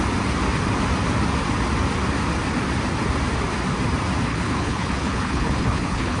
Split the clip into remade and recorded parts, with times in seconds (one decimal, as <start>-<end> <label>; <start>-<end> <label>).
0.0-4.3 recorded; 4.3-6.2 remade